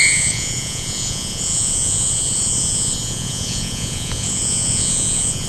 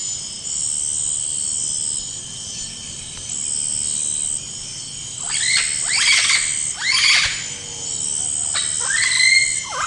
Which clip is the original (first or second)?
second